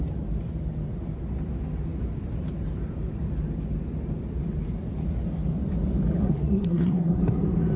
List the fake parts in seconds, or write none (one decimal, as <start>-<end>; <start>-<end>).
6.2-7.2